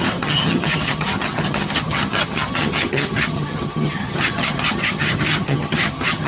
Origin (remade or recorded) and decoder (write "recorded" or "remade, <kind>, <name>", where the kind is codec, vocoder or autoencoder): remade, vocoder, HiFi-GAN